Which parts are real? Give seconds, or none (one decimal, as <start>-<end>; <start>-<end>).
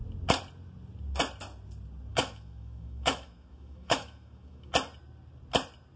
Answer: 0.0-2.1; 4.7-6.0